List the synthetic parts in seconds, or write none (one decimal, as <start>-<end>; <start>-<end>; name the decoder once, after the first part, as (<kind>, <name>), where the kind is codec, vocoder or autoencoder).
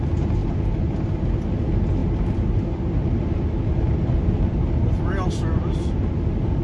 none